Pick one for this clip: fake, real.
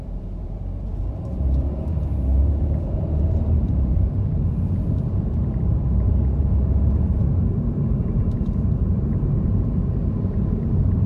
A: fake